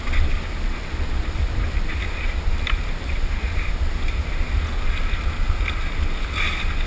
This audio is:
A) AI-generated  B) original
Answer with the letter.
B